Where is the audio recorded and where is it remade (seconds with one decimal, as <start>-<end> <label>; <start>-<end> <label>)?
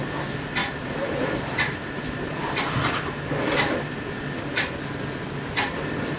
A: 0.0-0.6 recorded; 0.6-1.8 remade; 1.8-6.2 recorded